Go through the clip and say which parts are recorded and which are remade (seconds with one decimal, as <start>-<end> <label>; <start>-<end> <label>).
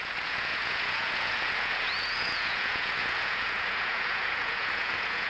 0.0-5.3 remade